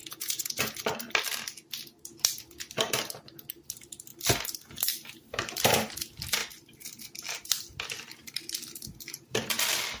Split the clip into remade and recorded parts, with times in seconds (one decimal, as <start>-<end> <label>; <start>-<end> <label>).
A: 0.0-0.6 remade; 0.6-10.0 recorded